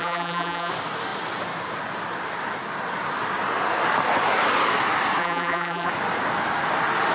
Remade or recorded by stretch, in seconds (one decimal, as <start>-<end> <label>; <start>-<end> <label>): 0.0-0.7 remade; 0.7-5.2 recorded; 5.2-5.9 remade; 5.9-7.1 recorded